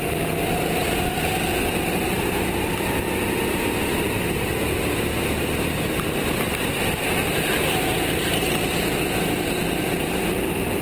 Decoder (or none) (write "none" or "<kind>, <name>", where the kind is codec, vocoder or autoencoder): none